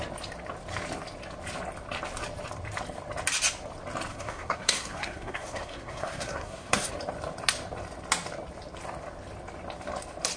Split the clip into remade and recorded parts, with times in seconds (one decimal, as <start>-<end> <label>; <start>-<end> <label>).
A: 0.0-4.1 recorded; 4.1-6.9 remade; 6.9-10.4 recorded

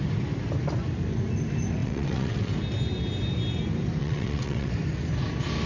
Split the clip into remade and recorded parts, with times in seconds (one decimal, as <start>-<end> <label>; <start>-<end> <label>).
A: 0.0-1.8 recorded; 1.8-2.5 remade; 2.5-4.0 recorded; 4.0-4.7 remade; 4.7-5.7 recorded

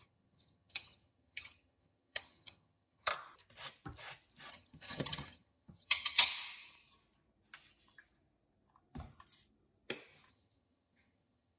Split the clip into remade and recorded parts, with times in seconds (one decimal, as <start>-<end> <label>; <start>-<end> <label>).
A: 0.0-3.1 remade; 3.1-4.5 recorded; 4.5-6.3 remade; 6.3-10.3 recorded; 10.3-11.6 remade

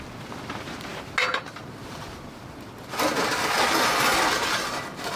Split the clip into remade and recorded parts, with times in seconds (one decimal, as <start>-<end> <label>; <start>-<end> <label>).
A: 0.0-5.2 recorded

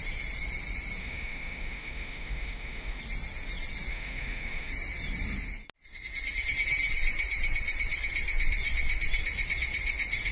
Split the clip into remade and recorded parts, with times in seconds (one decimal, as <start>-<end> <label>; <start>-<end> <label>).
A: 0.0-1.0 recorded; 1.0-3.0 remade; 3.0-3.9 recorded; 3.9-4.7 remade; 4.7-10.3 recorded